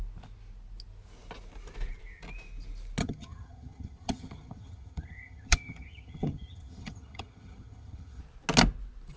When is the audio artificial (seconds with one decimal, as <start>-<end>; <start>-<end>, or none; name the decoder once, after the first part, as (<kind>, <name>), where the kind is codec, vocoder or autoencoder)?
3.0-8.2 (vocoder, HiFi-GAN)